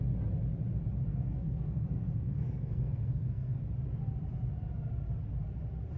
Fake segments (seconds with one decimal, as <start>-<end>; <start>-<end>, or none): 1.1-3.6